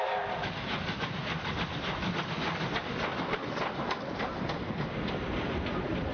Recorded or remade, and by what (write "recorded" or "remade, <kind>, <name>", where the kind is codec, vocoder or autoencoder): recorded